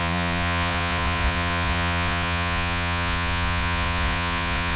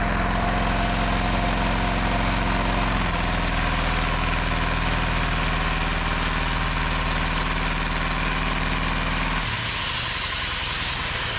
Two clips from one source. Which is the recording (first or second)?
second